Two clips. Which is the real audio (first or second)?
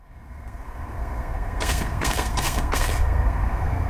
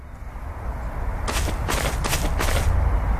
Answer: second